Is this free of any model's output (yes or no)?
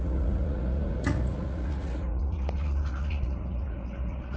no